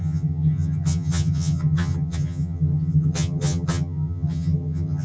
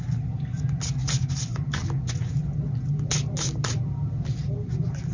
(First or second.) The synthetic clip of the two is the first